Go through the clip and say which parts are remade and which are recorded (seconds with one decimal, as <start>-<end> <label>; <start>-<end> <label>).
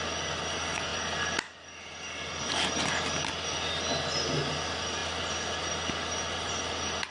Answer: 0.0-7.1 recorded